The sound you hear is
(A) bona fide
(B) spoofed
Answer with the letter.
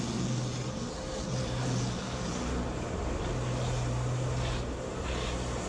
A